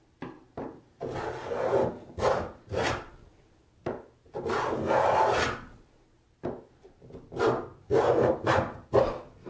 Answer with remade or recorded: recorded